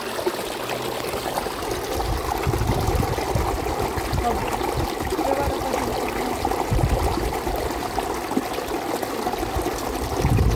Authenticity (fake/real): real